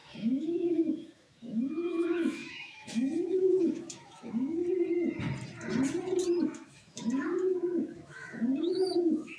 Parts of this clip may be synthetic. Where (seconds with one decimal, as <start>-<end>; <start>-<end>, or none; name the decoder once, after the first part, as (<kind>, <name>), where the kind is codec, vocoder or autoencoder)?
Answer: 0.0-4.6 (autoencoder, DAC-VAE); 6.4-9.4